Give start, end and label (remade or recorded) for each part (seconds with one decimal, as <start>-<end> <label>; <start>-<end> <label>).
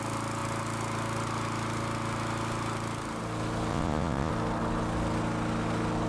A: 0.0-3.7 recorded; 3.7-4.3 remade; 4.3-6.1 recorded